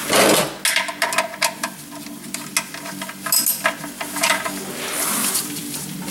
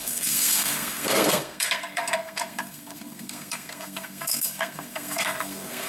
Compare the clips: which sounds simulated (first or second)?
second